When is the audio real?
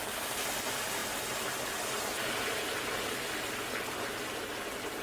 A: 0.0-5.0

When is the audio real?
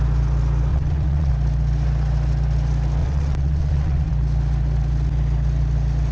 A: 0.0-0.7; 1.3-3.0; 4.1-6.1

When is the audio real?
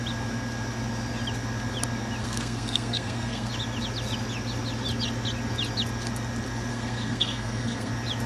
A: 0.0-2.2; 3.5-6.7; 7.9-8.3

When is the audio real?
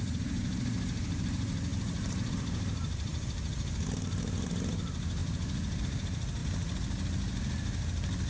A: 3.1-4.7; 5.2-5.8; 6.4-8.3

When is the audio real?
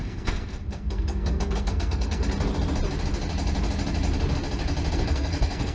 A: 2.2-4.9